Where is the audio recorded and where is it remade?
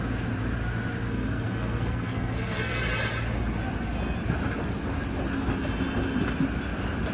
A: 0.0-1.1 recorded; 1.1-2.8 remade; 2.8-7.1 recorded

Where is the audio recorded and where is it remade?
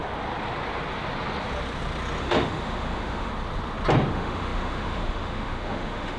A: 0.0-2.2 recorded; 2.2-3.3 remade; 3.3-4.1 recorded; 4.1-6.2 remade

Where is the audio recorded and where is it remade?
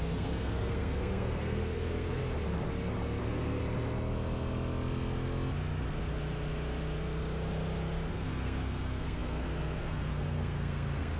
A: 0.0-2.2 remade; 2.2-3.2 recorded; 3.2-3.6 remade; 3.6-8.1 recorded; 8.1-11.2 remade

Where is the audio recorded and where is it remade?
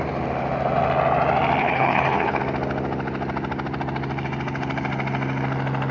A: 0.0-1.6 recorded; 1.6-2.4 remade; 2.4-5.9 recorded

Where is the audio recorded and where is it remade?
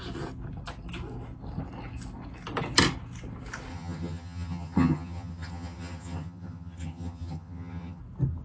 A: 0.0-3.7 recorded; 3.7-8.0 remade; 8.0-8.4 recorded